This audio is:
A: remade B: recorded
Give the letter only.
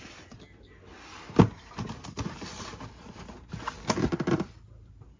B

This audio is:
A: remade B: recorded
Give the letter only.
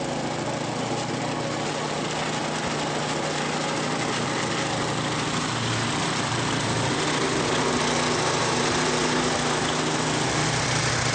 B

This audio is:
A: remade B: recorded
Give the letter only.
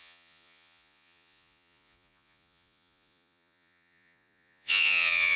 A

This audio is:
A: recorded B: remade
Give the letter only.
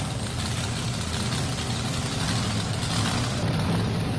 A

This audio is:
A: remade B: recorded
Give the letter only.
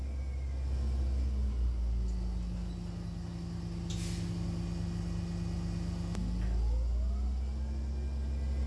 B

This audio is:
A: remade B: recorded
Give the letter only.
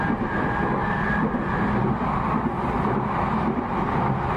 B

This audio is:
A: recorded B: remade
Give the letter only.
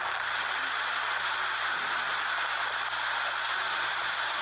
A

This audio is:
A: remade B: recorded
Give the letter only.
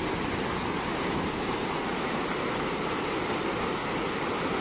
B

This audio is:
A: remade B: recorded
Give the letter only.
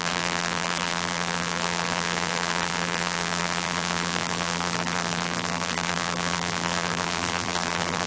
A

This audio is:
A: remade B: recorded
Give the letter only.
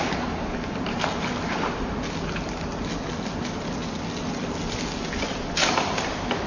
B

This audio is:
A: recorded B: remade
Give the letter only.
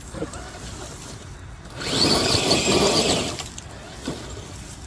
A